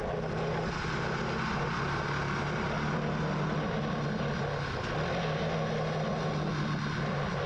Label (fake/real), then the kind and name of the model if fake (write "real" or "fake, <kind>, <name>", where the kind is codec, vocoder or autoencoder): real